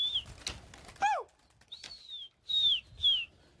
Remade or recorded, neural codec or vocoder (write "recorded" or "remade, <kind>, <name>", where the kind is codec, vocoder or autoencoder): recorded